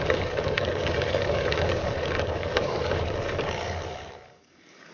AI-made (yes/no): yes